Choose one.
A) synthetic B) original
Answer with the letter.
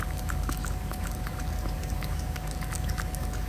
A